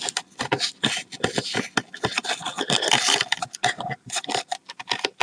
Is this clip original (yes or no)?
yes